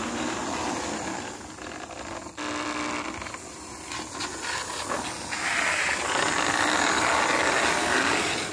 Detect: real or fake real